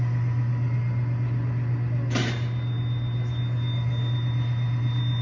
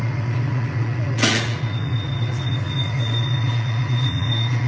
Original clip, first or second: first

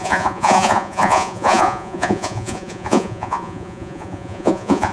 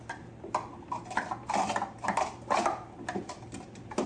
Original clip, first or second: second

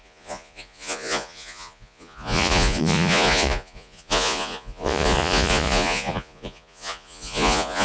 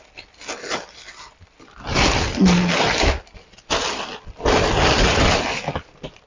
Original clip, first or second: second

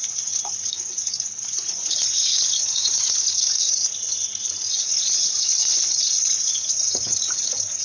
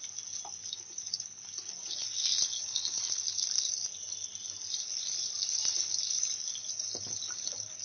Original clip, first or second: second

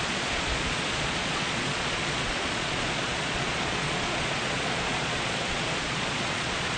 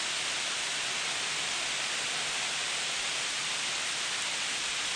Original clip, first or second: second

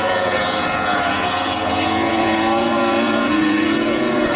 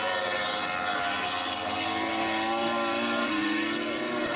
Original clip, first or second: second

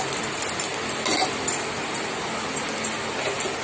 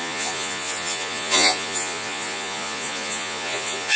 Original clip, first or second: first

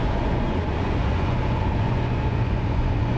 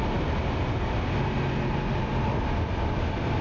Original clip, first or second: second